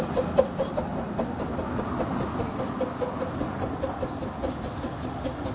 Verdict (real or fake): real